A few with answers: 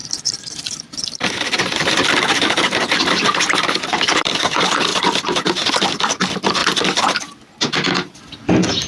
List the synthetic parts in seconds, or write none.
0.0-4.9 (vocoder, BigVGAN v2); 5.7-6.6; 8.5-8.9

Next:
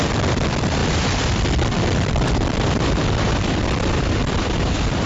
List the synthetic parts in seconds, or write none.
0.0-5.1 (vocoder, BigVGAN v2)

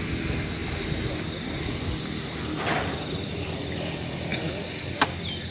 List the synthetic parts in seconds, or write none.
0.6-3.6 (vocoder, BigVGAN v2)

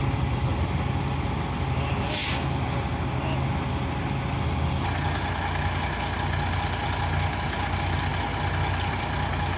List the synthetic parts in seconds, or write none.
none